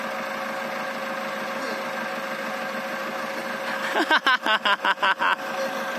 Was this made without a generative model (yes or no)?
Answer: yes